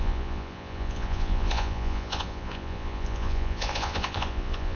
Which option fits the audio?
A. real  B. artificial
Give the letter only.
B